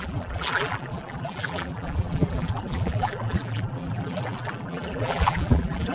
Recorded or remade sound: remade